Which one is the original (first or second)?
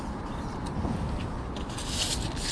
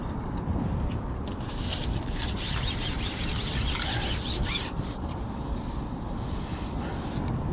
first